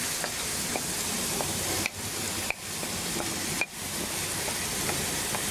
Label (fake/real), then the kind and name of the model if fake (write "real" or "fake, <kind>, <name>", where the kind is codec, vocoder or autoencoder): real